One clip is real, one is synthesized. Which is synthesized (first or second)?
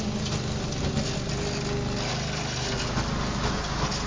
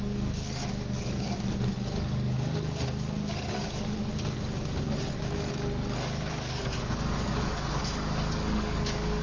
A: second